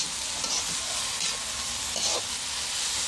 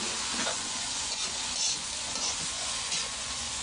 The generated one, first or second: second